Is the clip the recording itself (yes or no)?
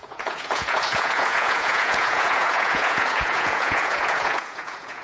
no